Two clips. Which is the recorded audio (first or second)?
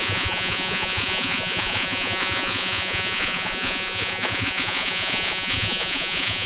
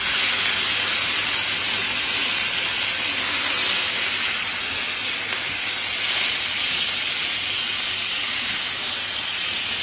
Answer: second